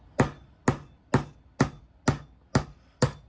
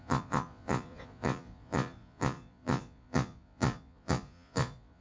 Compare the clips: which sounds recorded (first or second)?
first